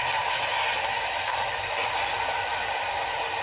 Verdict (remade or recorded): recorded